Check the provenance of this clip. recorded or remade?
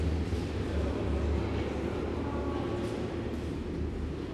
recorded